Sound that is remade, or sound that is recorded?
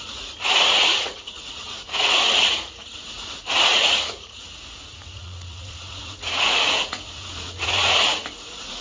remade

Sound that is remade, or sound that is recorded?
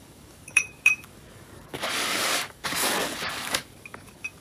remade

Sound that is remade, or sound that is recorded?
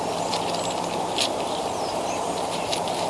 recorded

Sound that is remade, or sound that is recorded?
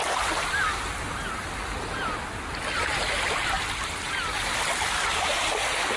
recorded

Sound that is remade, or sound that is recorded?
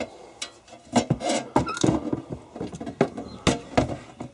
recorded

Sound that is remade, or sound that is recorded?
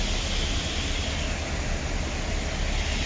recorded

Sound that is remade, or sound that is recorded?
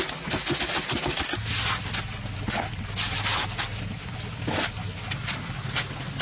recorded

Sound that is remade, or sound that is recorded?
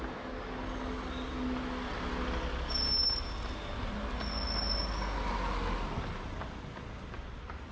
recorded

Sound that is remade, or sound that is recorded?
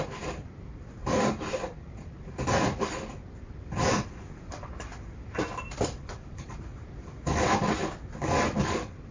remade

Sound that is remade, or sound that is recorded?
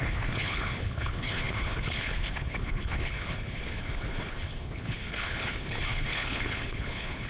remade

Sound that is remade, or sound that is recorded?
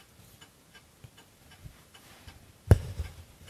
remade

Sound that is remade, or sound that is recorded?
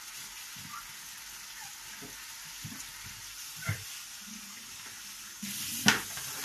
recorded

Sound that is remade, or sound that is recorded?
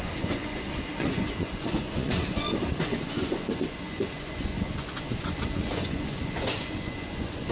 remade